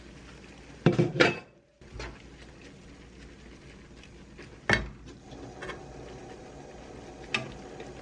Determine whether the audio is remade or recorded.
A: recorded